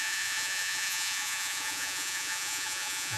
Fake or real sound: fake